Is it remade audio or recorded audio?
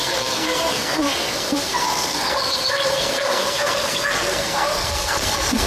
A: remade